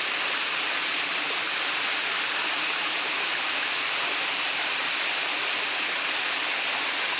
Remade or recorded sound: recorded